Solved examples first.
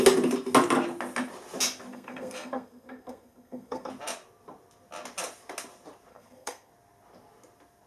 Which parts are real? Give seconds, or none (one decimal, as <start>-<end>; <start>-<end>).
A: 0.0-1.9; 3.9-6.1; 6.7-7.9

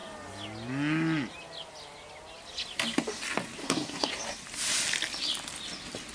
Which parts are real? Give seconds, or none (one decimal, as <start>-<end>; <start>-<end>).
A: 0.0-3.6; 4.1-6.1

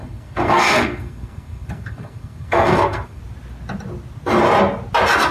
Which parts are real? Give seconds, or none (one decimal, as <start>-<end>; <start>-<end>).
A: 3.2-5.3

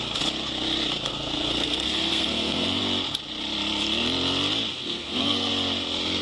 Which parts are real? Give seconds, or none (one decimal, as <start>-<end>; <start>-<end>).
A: 0.0-1.1; 2.8-4.7; 5.5-6.2

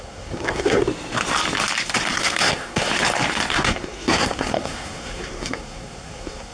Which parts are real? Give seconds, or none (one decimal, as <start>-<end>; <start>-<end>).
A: 0.8-2.1; 2.9-3.5